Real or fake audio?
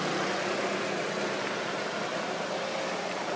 real